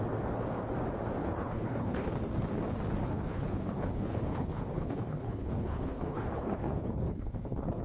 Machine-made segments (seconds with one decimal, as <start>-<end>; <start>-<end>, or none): 1.2-2.1; 3.0-7.8